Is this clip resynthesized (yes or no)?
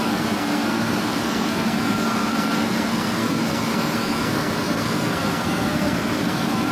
yes